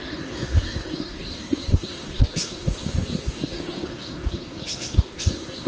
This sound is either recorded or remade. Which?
remade